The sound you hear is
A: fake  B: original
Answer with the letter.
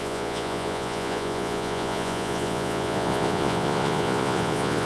A